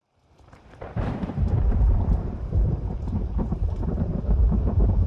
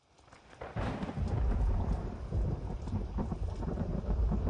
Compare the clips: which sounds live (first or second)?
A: second